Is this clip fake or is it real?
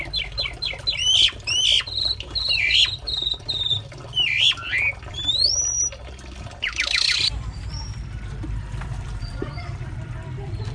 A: fake